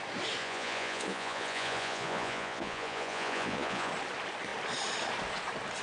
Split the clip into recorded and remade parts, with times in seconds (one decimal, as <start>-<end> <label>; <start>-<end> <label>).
0.0-0.4 recorded; 0.4-3.9 remade; 3.9-5.8 recorded